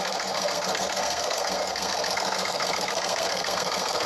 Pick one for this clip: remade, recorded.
remade